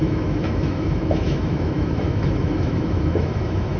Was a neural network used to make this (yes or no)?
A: yes